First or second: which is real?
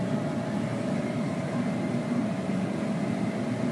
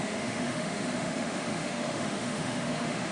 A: first